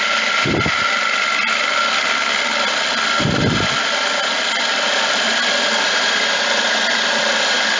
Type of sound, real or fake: real